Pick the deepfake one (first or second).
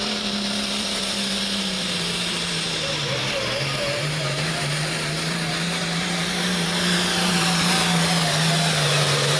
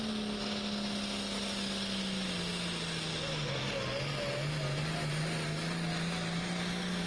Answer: first